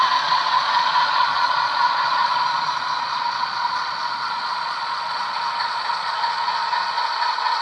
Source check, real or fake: fake